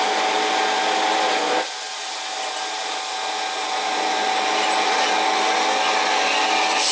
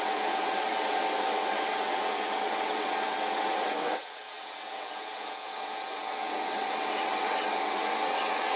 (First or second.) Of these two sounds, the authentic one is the first